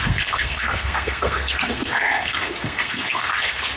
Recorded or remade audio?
remade